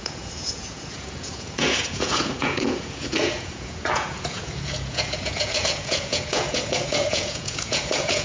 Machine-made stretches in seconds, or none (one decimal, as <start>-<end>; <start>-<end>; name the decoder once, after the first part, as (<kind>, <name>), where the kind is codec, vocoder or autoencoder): 0.0-8.2 (vocoder, Vocos)